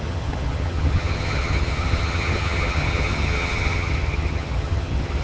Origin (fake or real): fake